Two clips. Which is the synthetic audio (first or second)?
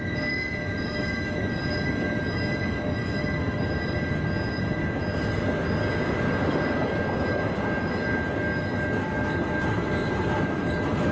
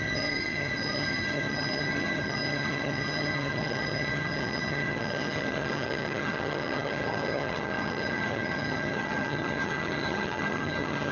second